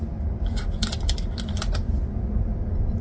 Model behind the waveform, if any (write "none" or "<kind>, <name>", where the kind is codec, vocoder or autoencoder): none